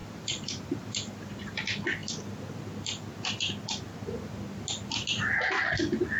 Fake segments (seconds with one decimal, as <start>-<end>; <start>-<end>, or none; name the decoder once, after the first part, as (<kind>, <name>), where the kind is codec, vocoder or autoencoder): 0.0-1.6 (vocoder, BigVGAN v2)